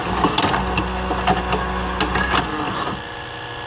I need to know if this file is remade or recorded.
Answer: recorded